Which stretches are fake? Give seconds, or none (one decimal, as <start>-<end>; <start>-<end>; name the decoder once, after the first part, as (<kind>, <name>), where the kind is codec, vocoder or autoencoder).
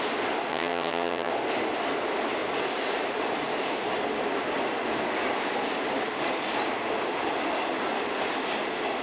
0.5-1.3 (vocoder, HiFi-GAN)